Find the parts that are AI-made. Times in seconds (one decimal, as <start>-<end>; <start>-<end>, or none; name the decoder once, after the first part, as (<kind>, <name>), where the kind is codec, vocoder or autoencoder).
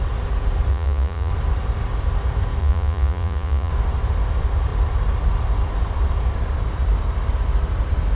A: 0.7-1.3 (vocoder, Vocos); 2.6-3.7